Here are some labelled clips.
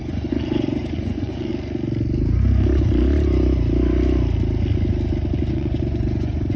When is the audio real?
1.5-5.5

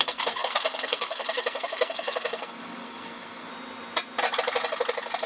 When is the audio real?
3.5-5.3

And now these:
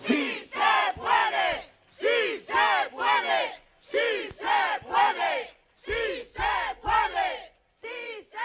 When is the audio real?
1.2-3.4

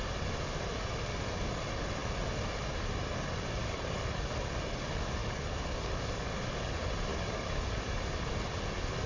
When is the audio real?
0.0-3.6; 4.3-5.2; 6.3-7.1; 8.3-9.1

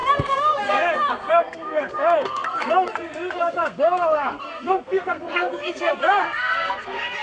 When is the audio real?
none